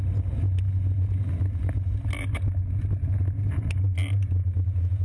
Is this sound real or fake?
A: real